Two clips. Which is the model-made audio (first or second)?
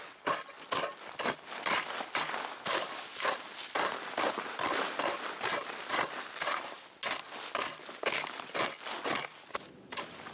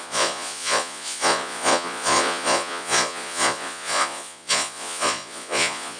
second